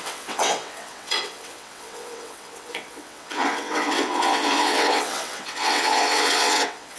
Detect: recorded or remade remade